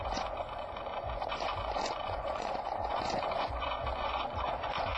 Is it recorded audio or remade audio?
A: remade